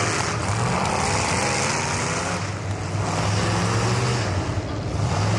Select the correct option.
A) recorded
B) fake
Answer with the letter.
A